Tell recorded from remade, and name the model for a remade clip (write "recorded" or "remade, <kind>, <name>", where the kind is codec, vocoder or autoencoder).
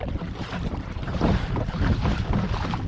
recorded